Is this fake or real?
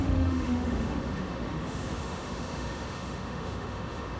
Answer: fake